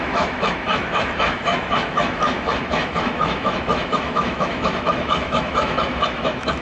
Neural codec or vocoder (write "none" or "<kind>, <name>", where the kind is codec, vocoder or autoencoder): autoencoder, DAC-VAE